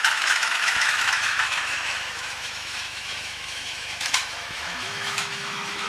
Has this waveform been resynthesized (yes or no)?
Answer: yes